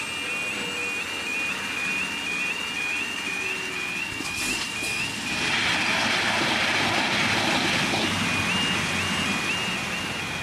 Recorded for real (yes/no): yes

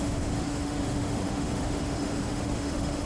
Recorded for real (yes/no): no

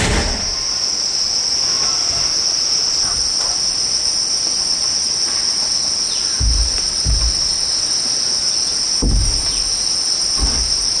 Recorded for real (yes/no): yes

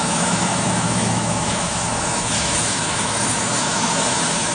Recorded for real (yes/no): no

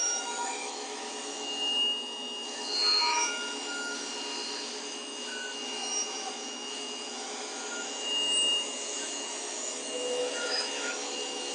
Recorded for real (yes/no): no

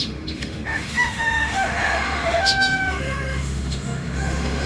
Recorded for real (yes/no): no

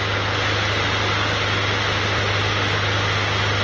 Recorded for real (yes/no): yes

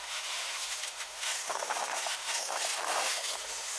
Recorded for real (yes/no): no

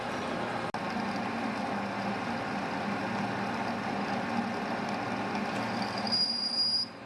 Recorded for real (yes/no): yes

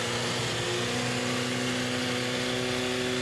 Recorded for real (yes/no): yes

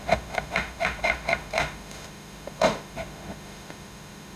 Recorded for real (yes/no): no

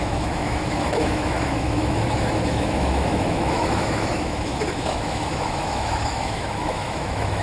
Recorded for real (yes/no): no